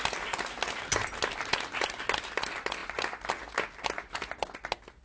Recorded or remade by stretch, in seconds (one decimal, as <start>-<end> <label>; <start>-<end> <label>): 0.0-5.0 recorded